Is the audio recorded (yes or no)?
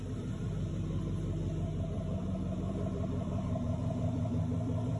no